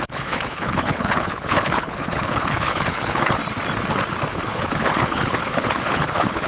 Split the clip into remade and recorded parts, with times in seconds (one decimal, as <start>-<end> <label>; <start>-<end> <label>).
0.0-3.4 remade; 3.4-4.3 recorded; 4.3-6.5 remade